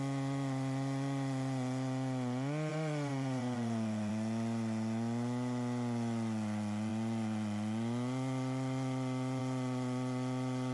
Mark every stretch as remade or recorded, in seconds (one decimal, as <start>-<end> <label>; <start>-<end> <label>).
0.0-2.7 recorded; 2.7-4.1 remade; 4.1-10.7 recorded